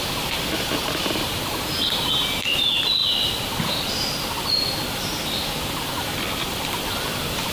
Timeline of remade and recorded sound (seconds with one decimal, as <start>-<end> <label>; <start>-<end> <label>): 0.0-3.0 recorded; 3.0-6.7 remade; 6.7-7.5 recorded

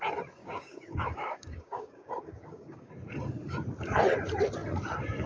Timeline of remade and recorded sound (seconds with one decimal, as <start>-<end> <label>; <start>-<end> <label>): 0.0-0.4 recorded; 0.4-2.9 remade; 2.9-5.3 recorded

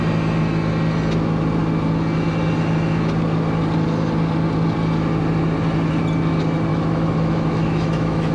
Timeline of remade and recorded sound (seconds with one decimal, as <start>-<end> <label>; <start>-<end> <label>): 0.0-6.7 recorded; 6.7-8.3 remade